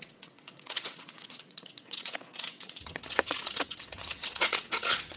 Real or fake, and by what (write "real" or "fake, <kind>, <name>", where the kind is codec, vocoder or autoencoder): fake, vocoder, WaveNeXt